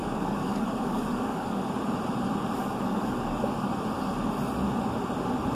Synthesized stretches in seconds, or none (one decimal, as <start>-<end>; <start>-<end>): 0.0-1.6; 2.6-3.7